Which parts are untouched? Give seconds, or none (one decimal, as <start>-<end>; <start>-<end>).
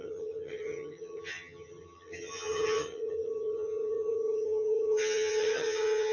none